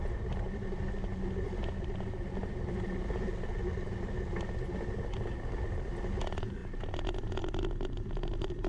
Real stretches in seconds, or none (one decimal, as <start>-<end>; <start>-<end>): 0.0-8.7